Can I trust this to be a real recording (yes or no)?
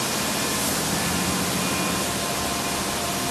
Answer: yes